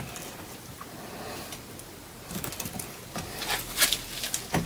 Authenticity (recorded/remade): recorded